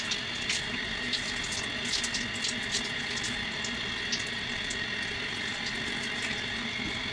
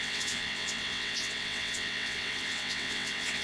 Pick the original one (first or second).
first